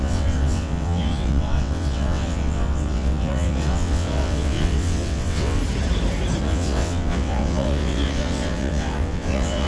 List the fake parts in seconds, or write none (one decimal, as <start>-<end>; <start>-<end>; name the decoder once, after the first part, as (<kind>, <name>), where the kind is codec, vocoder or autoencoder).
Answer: 0.0-5.6 (vocoder, WaveNeXt); 6.4-9.7